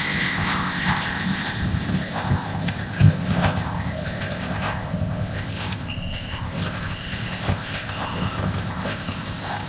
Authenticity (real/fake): fake